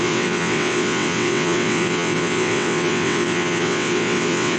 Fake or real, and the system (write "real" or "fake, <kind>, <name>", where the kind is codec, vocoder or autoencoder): fake, vocoder, WaveNeXt